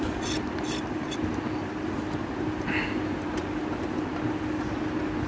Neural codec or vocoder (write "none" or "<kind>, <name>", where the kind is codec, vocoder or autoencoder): none